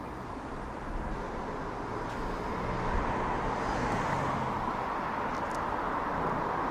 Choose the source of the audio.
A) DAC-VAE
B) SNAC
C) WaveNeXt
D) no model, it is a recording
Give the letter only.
D